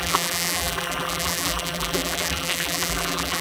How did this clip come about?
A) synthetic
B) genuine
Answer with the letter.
A